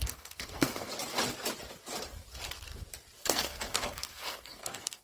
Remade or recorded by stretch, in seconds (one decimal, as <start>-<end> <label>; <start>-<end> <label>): 0.0-0.9 remade; 0.9-3.2 recorded; 3.2-5.0 remade